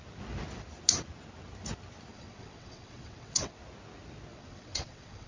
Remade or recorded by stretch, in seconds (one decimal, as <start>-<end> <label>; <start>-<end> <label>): 0.0-2.1 recorded; 2.1-3.6 remade; 3.6-4.3 recorded; 4.3-5.3 remade